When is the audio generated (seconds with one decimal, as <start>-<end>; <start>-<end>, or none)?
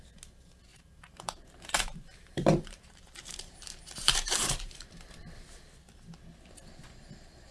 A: 0.7-5.2